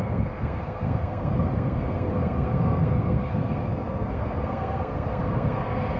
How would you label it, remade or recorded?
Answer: remade